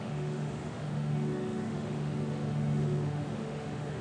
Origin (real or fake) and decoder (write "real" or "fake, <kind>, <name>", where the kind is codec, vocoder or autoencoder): fake, autoencoder, DAC-VAE